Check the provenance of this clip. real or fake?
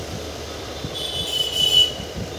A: real